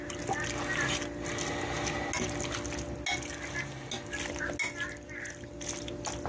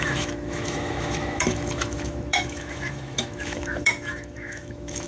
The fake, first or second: second